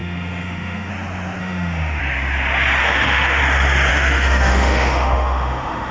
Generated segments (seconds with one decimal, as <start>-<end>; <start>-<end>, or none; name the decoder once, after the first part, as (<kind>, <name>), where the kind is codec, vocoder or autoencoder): 0.0-0.9 (autoencoder, DAC-VAE); 1.4-2.0; 2.8-3.4; 3.9-5.9